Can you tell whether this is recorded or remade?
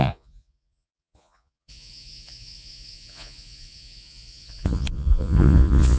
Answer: remade